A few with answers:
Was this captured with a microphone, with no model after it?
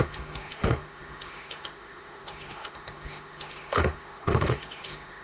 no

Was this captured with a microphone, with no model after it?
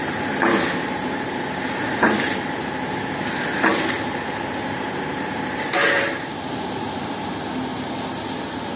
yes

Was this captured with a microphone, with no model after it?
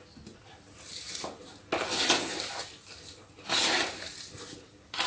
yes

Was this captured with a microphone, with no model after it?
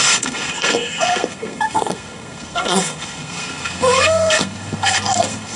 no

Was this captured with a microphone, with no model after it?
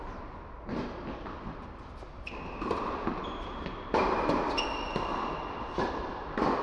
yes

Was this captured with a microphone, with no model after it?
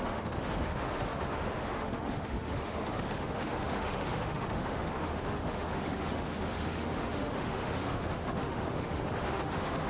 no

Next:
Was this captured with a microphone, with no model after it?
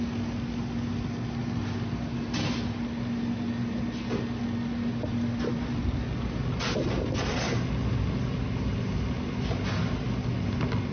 yes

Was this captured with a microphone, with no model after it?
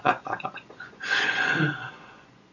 no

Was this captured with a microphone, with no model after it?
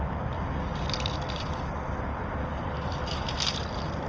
yes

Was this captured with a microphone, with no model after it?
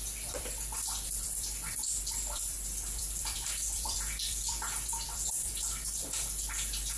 no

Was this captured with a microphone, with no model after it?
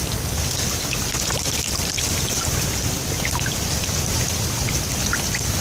yes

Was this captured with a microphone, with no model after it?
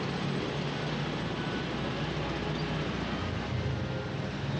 yes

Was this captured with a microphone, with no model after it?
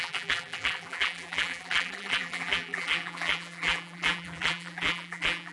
no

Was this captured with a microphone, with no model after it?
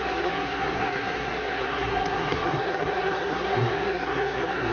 no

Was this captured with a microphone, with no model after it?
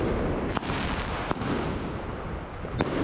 yes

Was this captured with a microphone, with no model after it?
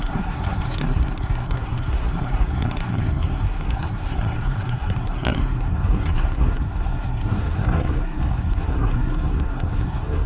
no